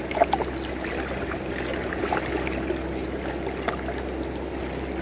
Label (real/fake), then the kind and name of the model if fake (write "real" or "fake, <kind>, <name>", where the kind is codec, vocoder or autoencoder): real